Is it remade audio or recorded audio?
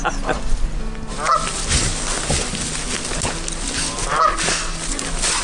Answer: recorded